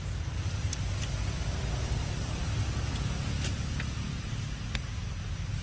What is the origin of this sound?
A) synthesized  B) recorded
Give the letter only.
B